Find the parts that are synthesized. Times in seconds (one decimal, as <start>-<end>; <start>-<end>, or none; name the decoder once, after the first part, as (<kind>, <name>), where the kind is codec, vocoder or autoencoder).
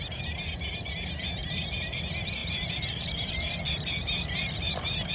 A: 1.4-2.0 (vocoder, BigVGAN v2); 2.4-5.1